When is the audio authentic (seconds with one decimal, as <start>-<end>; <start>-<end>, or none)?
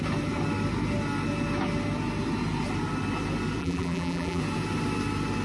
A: 0.0-3.6; 4.4-5.4